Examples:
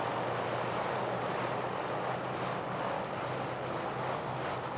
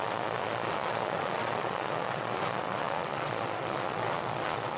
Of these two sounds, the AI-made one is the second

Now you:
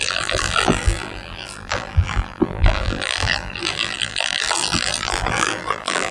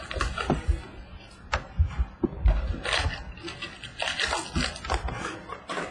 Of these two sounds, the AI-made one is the first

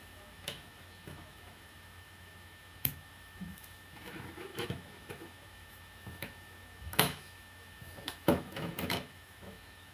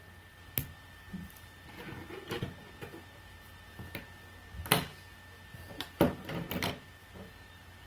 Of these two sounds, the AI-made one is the first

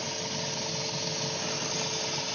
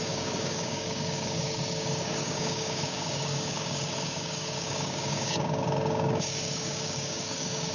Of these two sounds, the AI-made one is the second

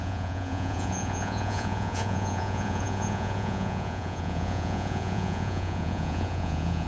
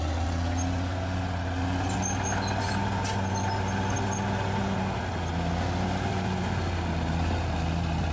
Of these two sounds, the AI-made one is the first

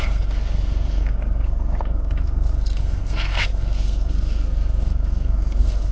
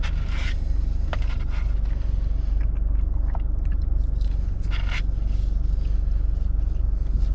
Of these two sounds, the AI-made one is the first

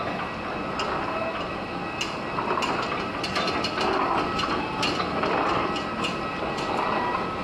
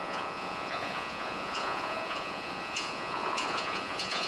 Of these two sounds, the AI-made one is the second